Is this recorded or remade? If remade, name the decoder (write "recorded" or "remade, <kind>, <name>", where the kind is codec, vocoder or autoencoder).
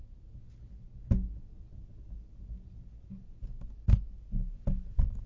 recorded